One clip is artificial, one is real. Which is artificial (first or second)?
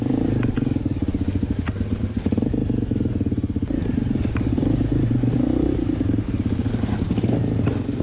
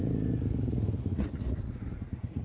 second